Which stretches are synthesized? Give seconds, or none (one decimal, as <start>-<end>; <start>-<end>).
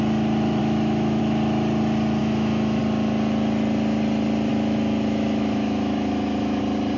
0.6-1.2; 2.2-2.8; 4.5-6.6